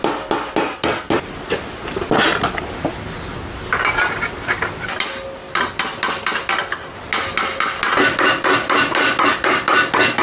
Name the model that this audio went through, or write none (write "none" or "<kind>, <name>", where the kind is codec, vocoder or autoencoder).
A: none